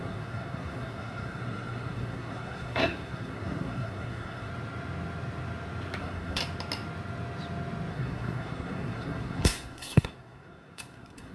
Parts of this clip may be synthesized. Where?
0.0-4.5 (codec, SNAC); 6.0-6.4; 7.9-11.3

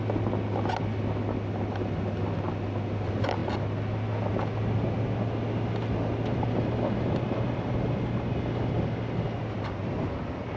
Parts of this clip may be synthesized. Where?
none

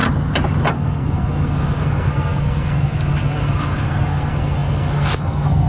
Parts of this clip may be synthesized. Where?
0.7-5.7 (codec, SNAC)

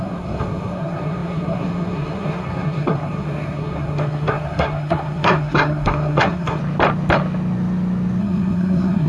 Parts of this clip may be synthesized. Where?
0.0-6.6 (codec, SNAC); 8.2-9.1

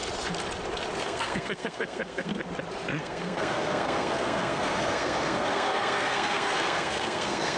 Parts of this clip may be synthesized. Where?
1.0-2.3 (codec, SNAC); 3.0-7.6

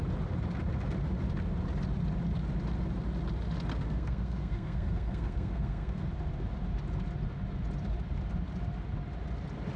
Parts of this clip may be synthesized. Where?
3.7-6.1 (codec, SNAC)

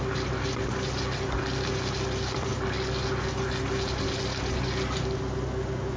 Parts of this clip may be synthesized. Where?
none

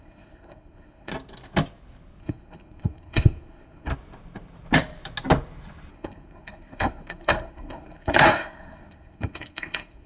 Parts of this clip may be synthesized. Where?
0.0-1.1 (codec, SNAC); 2.2-3.9; 5.9-10.1